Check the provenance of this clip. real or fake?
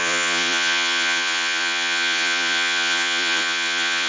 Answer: fake